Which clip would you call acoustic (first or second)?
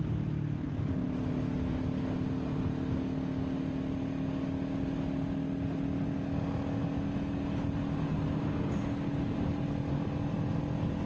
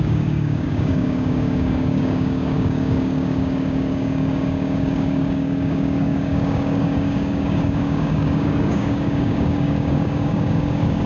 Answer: first